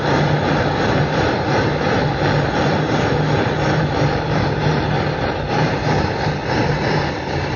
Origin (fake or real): fake